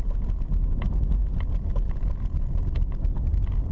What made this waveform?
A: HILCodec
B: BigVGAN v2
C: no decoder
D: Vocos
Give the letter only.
C